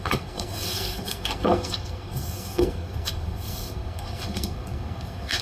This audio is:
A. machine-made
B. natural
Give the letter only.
A